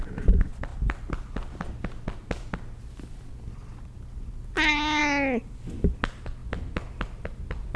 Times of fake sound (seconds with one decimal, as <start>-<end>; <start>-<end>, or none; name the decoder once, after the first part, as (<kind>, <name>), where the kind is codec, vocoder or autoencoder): none